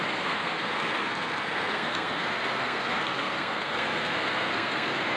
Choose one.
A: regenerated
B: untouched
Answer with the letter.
A